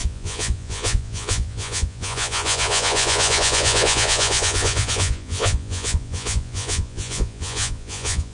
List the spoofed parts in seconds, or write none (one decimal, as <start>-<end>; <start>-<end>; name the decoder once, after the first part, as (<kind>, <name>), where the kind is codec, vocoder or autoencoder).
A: 0.0-8.3 (vocoder, Vocos)

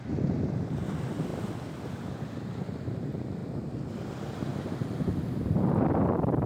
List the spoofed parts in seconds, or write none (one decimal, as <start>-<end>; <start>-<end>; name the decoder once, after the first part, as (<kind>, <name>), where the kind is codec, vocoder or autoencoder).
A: none

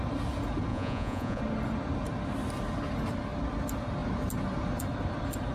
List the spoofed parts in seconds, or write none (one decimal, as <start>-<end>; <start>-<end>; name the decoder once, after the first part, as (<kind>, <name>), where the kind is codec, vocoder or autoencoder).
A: 0.7-1.4 (vocoder, Vocos)